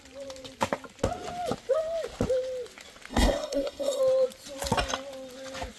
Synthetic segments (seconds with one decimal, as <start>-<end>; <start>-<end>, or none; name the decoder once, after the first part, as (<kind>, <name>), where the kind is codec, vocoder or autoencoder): 3.1-4.0 (codec, SNAC)